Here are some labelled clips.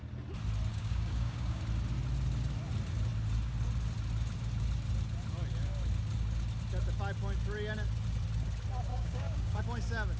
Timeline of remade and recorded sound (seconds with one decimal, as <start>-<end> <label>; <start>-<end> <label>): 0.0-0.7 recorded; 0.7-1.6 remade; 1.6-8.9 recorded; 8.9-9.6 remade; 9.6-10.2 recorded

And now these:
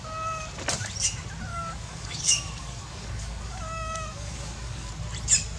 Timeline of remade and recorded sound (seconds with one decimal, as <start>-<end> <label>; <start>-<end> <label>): 0.0-1.5 recorded; 1.5-4.9 remade; 4.9-5.6 recorded

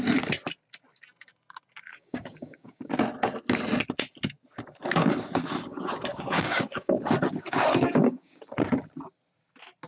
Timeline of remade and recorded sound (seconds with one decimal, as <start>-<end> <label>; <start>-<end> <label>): 0.0-1.9 recorded; 1.9-3.0 remade; 3.0-5.7 recorded; 5.7-8.4 remade; 8.4-9.9 recorded

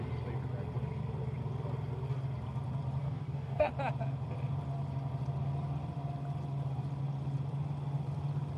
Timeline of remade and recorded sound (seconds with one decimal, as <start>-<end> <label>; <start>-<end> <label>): 0.0-3.0 recorded; 3.0-3.7 remade; 3.7-8.6 recorded